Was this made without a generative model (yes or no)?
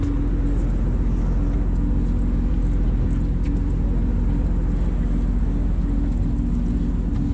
yes